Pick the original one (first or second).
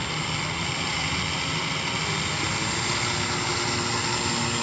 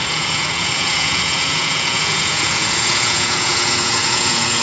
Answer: first